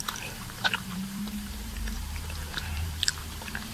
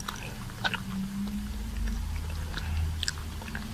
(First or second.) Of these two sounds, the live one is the second